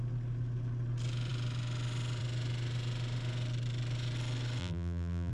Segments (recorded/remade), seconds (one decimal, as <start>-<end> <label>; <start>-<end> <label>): 0.0-4.6 recorded; 4.6-5.3 remade